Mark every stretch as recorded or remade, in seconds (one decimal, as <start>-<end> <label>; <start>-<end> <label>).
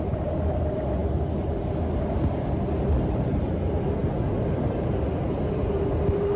0.0-6.4 recorded